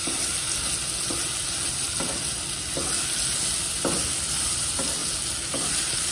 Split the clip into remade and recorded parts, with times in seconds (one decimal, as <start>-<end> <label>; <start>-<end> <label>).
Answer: 0.0-3.7 recorded; 3.7-5.0 remade; 5.0-5.6 recorded; 5.6-6.1 remade